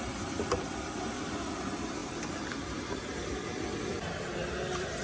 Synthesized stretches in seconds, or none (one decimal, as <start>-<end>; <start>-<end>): none